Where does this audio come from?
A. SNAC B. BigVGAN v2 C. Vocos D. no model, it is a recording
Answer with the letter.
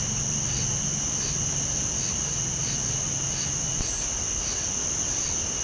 D